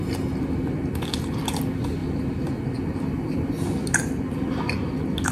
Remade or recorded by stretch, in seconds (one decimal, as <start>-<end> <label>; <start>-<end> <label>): 0.0-5.3 recorded